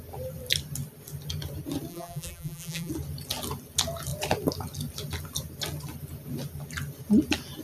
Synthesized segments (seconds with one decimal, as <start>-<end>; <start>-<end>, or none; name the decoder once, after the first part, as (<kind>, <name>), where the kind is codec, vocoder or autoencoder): 1.9-2.9 (vocoder, BigVGAN v2)